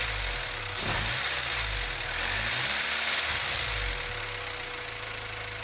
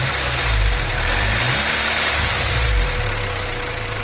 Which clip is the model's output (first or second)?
second